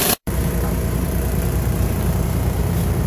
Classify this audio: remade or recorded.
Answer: remade